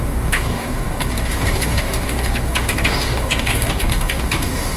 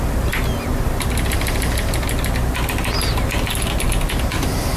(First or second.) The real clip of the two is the second